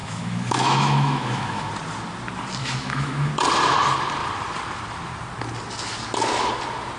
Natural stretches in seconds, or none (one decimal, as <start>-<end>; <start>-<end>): 1.7-2.6; 3.3-7.0